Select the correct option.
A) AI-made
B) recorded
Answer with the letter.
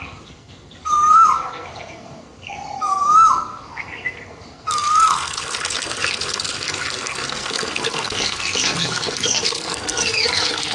A